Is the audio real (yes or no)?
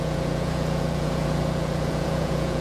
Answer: no